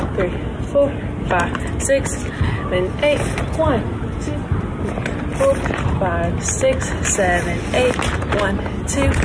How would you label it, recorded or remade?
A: recorded